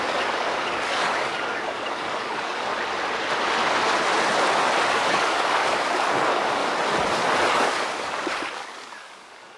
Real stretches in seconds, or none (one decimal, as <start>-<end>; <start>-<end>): 2.7-4.9; 6.6-7.5